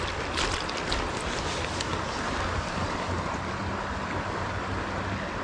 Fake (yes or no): no